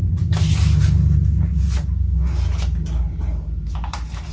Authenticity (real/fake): real